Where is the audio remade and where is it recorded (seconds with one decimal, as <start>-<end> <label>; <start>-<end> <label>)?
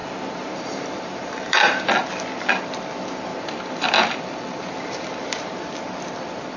0.0-1.5 remade; 1.5-3.3 recorded; 3.3-5.1 remade; 5.1-6.6 recorded